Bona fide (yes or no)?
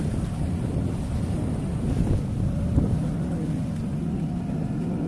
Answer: yes